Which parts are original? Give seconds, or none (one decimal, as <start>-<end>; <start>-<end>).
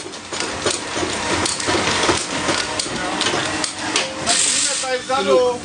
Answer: 0.0-1.5; 2.6-5.6